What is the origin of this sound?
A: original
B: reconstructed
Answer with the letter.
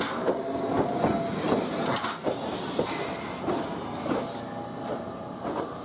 A